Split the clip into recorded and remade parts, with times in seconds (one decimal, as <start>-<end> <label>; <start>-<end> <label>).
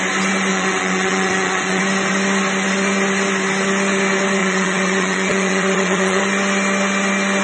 0.0-0.5 recorded; 0.5-1.8 remade; 1.8-4.4 recorded; 4.4-6.2 remade; 6.2-7.4 recorded